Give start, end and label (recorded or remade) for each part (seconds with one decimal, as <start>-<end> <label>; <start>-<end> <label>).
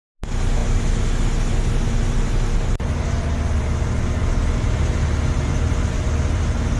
0.0-6.8 recorded